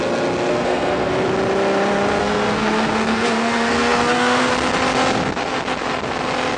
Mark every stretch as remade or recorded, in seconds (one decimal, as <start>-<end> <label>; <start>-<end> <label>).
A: 0.0-0.5 recorded; 0.5-1.1 remade; 1.1-2.2 recorded; 2.2-4.5 remade; 4.5-6.6 recorded